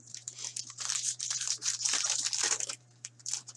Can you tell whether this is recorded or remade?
remade